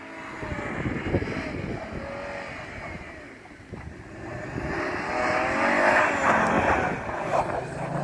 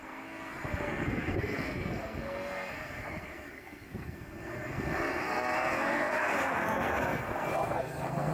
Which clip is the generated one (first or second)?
second